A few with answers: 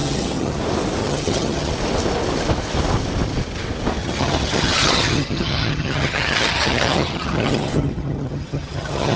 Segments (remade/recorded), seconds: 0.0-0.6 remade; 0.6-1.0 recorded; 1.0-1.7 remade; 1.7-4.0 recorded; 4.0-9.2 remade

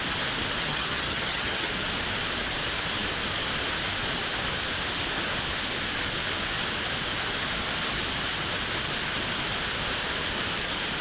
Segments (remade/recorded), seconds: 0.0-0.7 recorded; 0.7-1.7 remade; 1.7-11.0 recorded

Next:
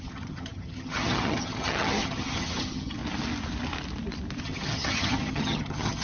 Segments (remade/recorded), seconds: 0.0-3.0 remade; 3.0-4.4 recorded; 4.4-6.0 remade